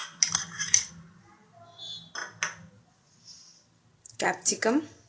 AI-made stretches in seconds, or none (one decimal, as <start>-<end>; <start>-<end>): 0.0-0.9